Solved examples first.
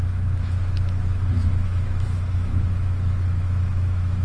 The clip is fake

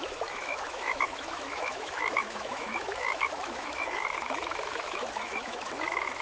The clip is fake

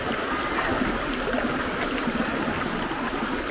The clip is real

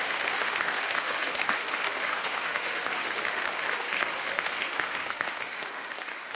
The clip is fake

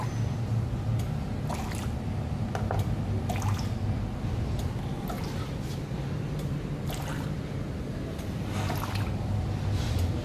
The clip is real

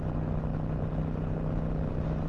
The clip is real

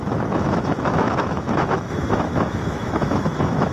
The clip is fake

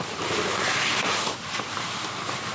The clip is real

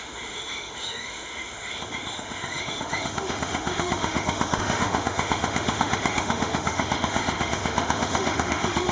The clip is fake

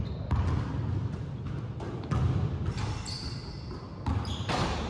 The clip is real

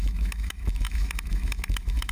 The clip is fake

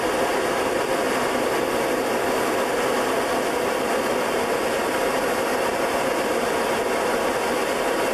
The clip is real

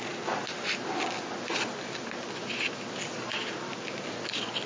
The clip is real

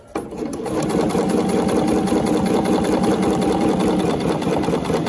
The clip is real